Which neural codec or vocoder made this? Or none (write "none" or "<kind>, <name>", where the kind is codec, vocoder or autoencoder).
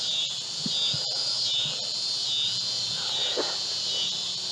none